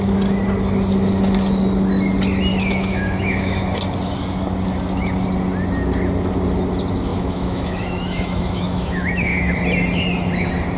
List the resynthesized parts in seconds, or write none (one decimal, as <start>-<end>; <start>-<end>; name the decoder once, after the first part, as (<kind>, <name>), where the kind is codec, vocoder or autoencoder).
2.5-3.8 (autoencoder, DAC-VAE); 7.1-9.5